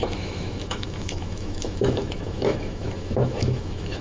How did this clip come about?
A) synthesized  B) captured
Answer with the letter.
A